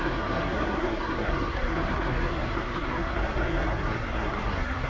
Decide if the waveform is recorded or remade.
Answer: remade